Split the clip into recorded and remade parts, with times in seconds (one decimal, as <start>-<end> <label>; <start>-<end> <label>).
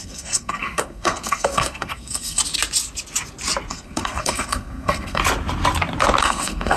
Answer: 0.0-2.4 remade; 2.4-3.7 recorded; 3.7-5.2 remade; 5.2-6.2 recorded; 6.2-6.8 remade